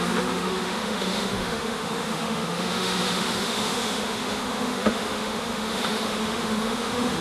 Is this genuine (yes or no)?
no